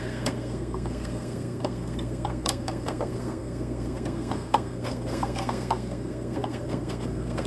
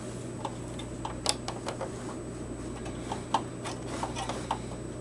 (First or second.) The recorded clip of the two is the second